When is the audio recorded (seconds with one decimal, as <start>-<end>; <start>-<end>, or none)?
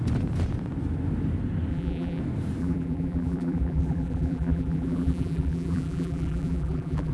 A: 0.0-1.7; 2.2-2.6